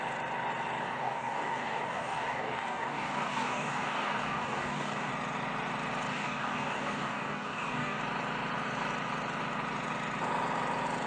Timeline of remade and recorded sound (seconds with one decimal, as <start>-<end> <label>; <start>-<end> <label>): 0.0-0.8 recorded; 0.8-5.1 remade; 5.1-6.1 recorded; 6.1-8.0 remade; 8.0-11.1 recorded